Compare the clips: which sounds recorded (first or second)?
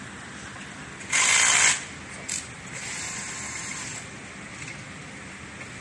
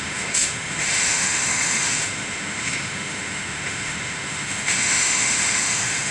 first